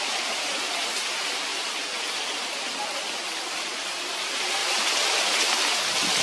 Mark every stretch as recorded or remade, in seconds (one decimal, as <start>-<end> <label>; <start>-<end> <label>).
0.0-1.5 recorded; 1.5-2.8 remade; 2.8-4.6 recorded; 4.6-5.4 remade; 5.4-6.2 recorded